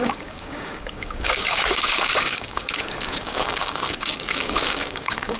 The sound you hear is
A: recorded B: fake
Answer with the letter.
B